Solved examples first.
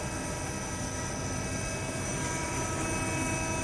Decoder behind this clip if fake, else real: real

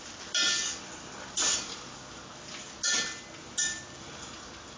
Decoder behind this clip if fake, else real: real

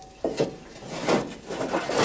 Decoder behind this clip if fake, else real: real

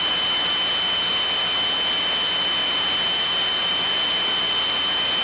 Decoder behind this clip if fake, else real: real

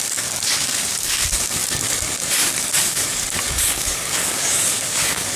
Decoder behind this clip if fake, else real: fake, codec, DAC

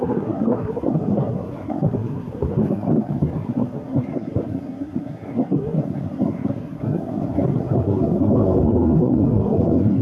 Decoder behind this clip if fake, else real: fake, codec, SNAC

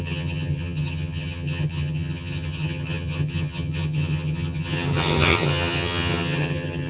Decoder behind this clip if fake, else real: fake, vocoder, HiFi-GAN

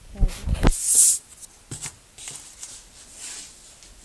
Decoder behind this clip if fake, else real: real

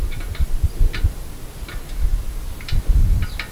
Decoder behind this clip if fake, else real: real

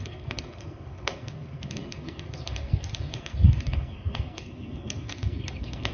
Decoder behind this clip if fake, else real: fake, codec, SNAC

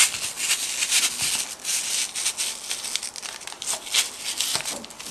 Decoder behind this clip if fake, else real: real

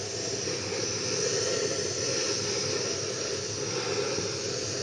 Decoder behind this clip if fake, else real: real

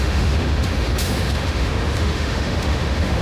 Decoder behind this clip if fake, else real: fake, autoencoder, DAC-VAE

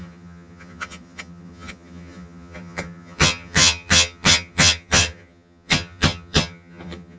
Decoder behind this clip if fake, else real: fake, vocoder, HiFi-GAN